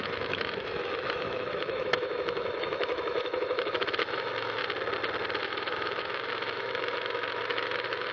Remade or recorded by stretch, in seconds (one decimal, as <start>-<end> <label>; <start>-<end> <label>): 0.0-4.6 remade; 4.6-5.4 recorded; 5.4-8.1 remade